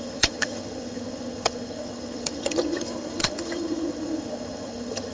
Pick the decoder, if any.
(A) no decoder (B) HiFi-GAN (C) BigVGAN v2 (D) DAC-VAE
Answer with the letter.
B